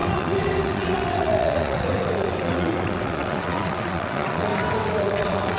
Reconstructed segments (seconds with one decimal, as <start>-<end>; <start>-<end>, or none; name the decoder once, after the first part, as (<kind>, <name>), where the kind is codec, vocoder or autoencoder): 0.0-4.5 (vocoder, WaveNeXt); 5.0-5.6